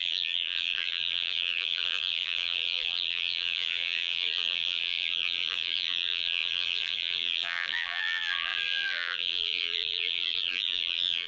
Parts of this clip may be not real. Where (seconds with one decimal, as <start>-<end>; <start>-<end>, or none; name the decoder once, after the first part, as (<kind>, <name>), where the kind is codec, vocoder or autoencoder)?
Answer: 0.0-11.3 (vocoder, BigVGAN v2)